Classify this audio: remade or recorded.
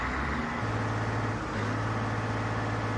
recorded